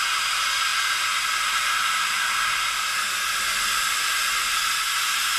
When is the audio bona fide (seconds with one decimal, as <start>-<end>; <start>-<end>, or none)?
0.0-5.4